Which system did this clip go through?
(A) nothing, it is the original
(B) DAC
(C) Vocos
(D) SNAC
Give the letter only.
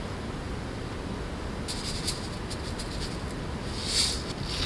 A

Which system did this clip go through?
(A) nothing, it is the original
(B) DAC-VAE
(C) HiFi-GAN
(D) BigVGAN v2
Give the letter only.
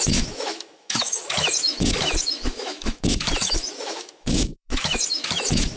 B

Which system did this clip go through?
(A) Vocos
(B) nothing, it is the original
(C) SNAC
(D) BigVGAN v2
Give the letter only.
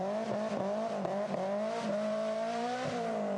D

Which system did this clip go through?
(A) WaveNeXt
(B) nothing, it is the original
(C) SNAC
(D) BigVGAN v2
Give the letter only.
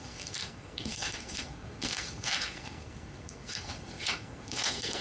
C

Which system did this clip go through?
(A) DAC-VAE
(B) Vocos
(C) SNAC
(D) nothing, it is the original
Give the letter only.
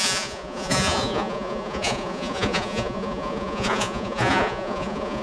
B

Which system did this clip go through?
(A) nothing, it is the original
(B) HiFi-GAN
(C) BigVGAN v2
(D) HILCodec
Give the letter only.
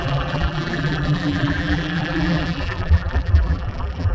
C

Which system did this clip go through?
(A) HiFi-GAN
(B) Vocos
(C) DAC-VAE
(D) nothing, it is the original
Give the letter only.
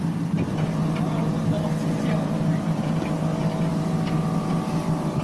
D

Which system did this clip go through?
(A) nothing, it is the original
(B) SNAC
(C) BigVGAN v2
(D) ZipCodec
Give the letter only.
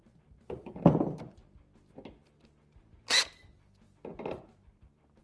A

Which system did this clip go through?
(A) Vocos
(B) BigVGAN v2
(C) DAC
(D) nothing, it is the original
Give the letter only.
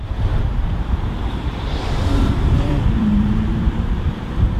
B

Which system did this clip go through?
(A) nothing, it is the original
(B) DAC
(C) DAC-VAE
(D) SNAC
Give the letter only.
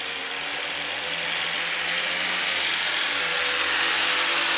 A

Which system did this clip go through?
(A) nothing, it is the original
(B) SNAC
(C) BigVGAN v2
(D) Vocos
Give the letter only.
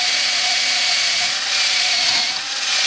D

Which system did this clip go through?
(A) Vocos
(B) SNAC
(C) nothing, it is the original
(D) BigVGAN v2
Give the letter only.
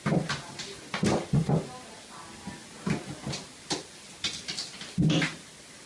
C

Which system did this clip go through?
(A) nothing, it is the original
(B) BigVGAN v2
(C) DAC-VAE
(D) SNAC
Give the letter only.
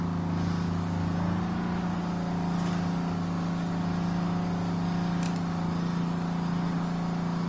A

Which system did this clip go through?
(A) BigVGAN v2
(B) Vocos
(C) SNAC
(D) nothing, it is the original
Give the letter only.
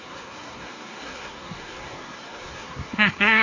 C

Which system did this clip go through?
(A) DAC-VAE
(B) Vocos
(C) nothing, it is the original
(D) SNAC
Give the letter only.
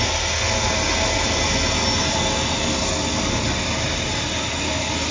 C